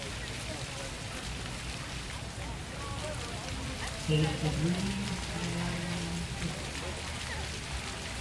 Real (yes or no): yes